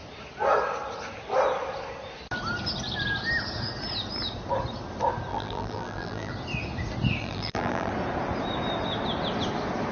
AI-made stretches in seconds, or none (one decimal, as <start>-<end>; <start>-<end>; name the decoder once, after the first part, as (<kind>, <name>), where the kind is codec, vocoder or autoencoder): 5.3-6.3 (vocoder, BigVGAN v2); 7.2-7.9